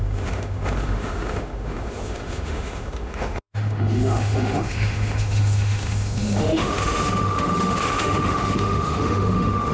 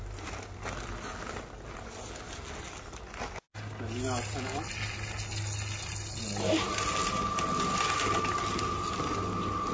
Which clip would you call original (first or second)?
second